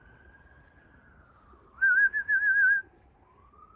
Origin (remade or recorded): recorded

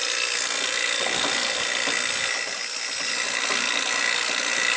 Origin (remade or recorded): recorded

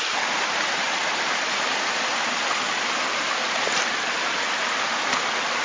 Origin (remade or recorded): recorded